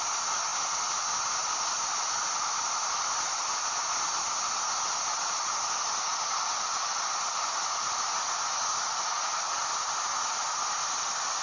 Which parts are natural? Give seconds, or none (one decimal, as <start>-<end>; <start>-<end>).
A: 0.0-11.4